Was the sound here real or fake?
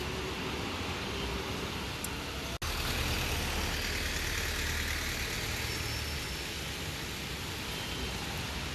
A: real